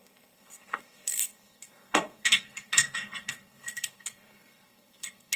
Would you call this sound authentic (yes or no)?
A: no